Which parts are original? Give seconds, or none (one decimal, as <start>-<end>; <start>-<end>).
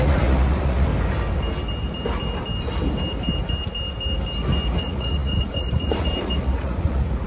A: 0.9-4.8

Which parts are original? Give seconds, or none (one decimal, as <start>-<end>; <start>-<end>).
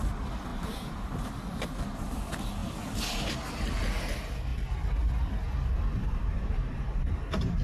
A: 0.0-0.5; 1.3-5.9; 7.0-7.6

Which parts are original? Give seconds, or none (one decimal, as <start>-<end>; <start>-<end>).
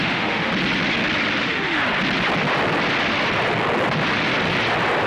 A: 0.5-1.4; 1.8-5.1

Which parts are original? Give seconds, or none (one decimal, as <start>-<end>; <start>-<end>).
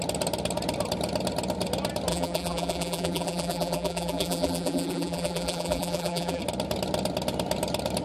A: 0.0-2.1; 6.4-8.0